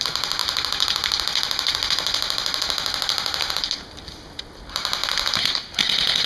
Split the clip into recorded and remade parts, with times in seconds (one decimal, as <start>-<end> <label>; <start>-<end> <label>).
0.0-6.3 recorded